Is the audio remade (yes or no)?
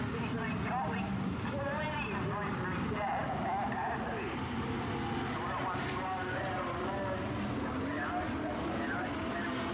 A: no